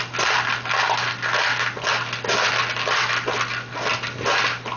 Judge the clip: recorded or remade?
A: recorded